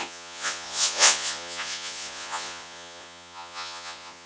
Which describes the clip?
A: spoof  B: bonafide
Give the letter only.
A